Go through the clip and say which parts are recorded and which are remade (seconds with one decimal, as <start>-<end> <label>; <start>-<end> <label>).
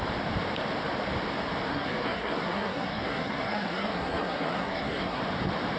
0.0-1.7 recorded; 1.7-5.2 remade; 5.2-5.8 recorded